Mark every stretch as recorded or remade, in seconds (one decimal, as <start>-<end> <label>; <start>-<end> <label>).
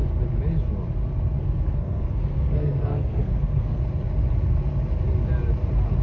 0.0-1.4 recorded; 1.4-3.8 remade; 3.8-6.0 recorded